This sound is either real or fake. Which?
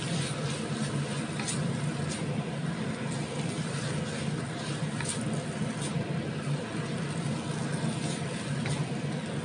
real